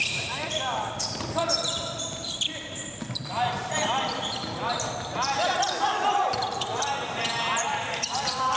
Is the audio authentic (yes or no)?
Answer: no